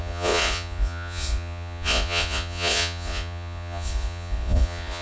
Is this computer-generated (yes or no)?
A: yes